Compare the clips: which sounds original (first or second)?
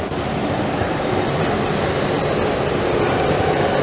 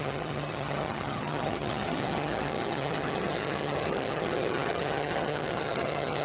first